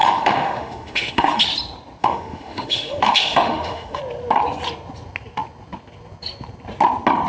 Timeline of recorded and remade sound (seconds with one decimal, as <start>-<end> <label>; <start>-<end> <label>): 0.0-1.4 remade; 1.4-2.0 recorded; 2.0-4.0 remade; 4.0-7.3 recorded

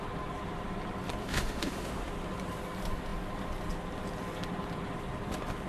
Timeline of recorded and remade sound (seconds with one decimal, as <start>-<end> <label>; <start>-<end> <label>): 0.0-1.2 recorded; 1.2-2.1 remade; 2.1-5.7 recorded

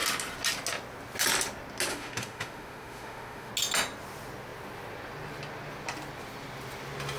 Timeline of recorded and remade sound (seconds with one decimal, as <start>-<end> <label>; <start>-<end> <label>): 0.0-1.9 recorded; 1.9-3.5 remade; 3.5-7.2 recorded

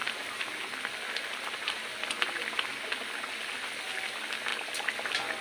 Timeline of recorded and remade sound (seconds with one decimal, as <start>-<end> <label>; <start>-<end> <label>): 0.0-5.4 recorded

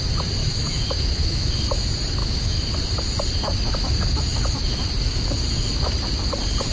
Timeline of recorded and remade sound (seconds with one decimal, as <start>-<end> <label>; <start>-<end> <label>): 0.0-0.4 recorded; 0.4-1.5 remade; 1.5-2.2 recorded; 2.2-2.7 remade; 2.7-6.7 recorded

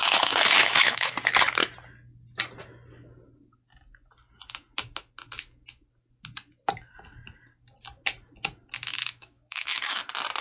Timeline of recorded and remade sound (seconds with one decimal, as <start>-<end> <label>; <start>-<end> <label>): 0.0-1.1 remade; 1.1-8.9 recorded; 8.9-10.0 remade; 10.0-10.4 recorded

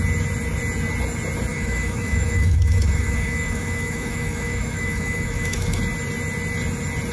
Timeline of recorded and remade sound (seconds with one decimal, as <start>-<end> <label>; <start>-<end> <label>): 0.0-1.5 recorded; 1.5-5.8 remade; 5.8-7.1 recorded